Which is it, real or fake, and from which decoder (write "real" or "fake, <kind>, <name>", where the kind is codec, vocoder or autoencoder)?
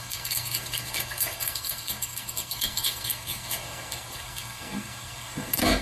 fake, codec, SNAC